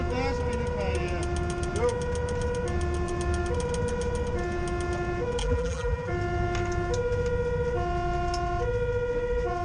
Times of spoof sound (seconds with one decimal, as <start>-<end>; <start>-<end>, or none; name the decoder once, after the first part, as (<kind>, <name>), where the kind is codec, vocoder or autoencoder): 5.4-6.1 (vocoder, BigVGAN v2)